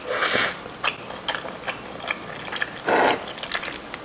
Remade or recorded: recorded